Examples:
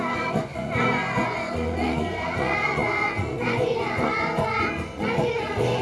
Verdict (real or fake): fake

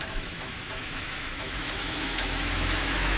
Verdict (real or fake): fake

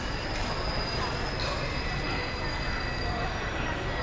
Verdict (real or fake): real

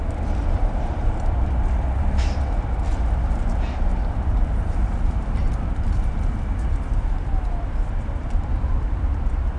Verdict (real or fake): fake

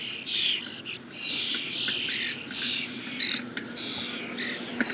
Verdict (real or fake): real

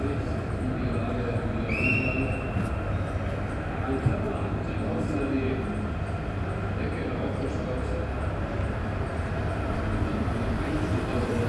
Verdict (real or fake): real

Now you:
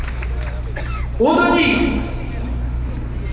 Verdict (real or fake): real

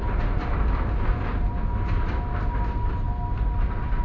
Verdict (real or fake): real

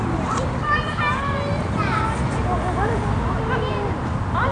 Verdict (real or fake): real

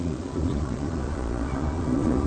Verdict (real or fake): fake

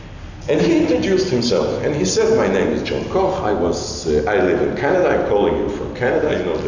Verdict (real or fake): real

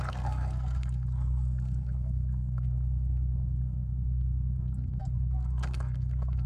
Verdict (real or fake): fake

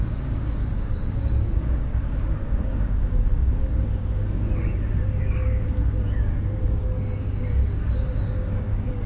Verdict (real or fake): fake